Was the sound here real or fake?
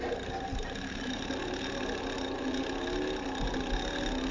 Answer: real